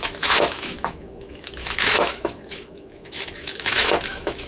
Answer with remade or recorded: remade